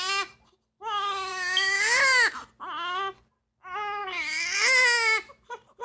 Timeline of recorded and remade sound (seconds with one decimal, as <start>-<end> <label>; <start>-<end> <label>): 0.0-5.8 recorded